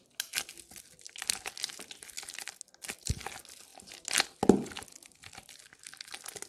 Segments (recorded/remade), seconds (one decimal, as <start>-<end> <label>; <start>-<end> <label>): 0.0-6.5 recorded